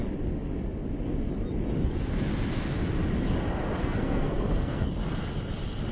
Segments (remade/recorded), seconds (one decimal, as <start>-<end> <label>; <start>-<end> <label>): 0.0-3.8 recorded; 3.8-4.9 remade; 4.9-5.9 recorded